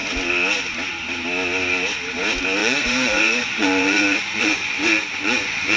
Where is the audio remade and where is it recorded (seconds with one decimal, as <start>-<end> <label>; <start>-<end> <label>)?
0.0-2.6 recorded; 2.6-5.8 remade